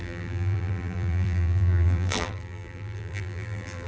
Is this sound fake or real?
fake